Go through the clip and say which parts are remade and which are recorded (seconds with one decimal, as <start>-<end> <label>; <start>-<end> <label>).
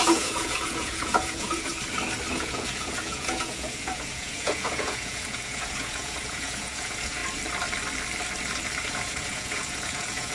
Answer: 0.0-1.7 remade; 1.7-2.3 recorded; 2.3-7.2 remade; 7.2-8.8 recorded; 8.8-10.3 remade